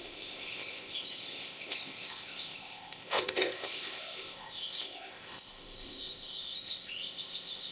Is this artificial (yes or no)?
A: yes